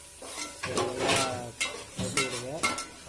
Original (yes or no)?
yes